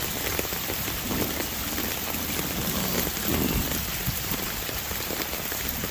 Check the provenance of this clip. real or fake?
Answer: real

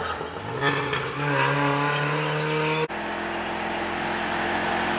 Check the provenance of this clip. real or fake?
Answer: real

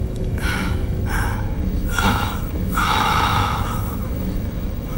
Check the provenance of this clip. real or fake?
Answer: fake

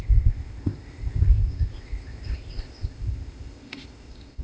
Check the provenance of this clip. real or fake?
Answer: fake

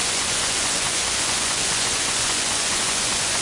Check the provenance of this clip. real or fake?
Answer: fake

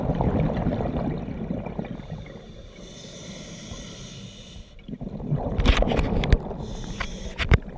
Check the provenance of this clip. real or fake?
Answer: real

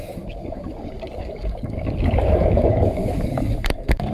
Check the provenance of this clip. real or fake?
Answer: fake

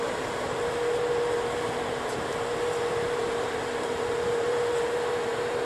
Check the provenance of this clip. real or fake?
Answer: fake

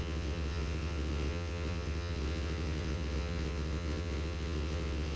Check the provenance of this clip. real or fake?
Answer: fake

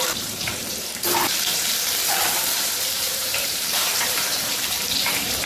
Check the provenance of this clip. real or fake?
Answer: fake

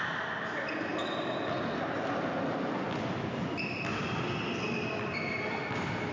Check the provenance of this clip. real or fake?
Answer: real